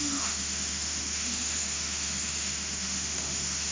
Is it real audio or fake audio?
fake